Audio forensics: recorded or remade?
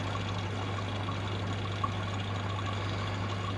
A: recorded